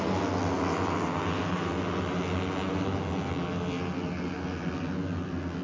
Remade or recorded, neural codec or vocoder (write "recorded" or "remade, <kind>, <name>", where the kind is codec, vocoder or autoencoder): recorded